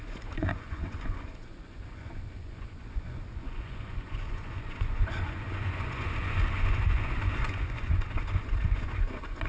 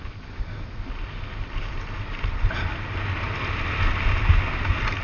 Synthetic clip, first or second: first